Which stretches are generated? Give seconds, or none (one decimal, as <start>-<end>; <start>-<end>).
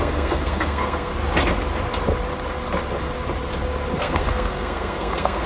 0.0-1.1; 4.0-5.5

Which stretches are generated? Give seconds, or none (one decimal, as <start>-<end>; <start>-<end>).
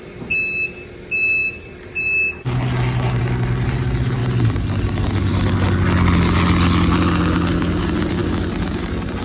none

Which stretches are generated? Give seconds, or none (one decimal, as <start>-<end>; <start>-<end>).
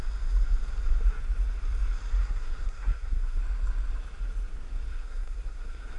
2.2-3.4; 4.9-6.0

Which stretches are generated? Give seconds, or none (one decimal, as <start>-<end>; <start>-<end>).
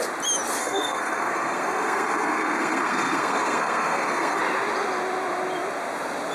0.6-4.4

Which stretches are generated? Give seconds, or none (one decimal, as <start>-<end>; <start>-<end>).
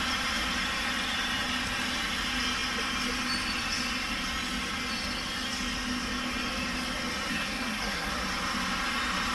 7.3-8.1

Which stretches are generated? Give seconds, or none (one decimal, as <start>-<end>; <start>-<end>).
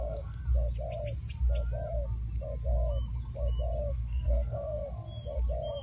0.0-0.4; 3.9-4.8